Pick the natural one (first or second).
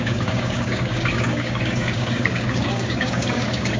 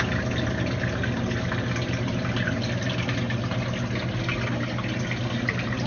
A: second